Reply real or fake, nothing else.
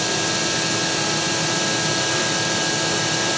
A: real